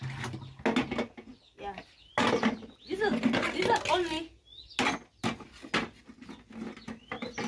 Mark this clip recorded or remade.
recorded